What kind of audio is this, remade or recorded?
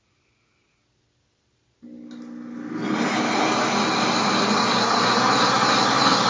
recorded